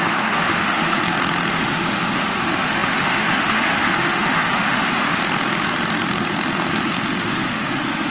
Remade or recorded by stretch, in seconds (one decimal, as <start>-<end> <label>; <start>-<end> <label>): 0.0-1.0 remade; 1.0-1.5 recorded; 1.5-5.2 remade; 5.2-7.2 recorded; 7.2-8.1 remade